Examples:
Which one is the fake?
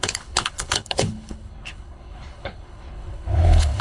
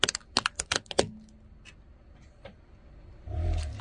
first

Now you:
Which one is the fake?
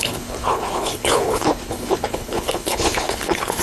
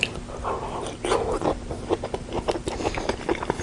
first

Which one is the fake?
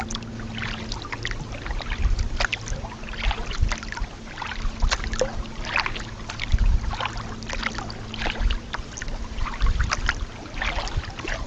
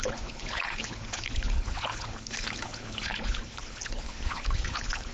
second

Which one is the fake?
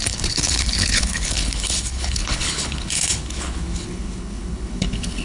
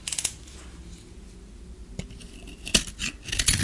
first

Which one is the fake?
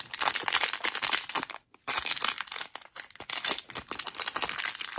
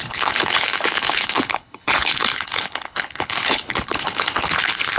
second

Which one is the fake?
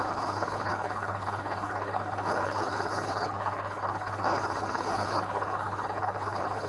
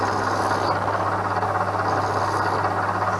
first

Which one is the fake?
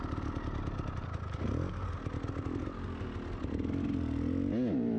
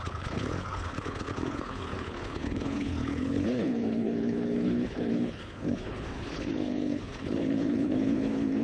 second